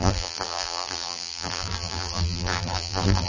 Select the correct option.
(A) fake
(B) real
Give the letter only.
A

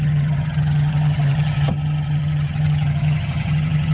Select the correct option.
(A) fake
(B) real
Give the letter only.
A